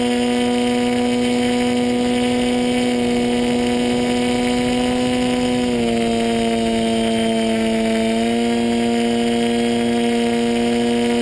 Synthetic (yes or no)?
no